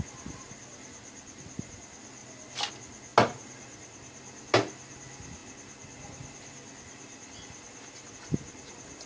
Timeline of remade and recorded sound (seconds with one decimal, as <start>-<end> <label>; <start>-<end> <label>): 0.0-9.1 recorded